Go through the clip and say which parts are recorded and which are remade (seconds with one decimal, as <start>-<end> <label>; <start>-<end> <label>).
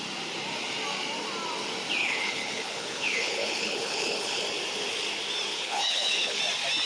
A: 0.0-2.0 recorded; 2.0-4.4 remade; 4.4-5.5 recorded; 5.5-6.4 remade; 6.4-6.9 recorded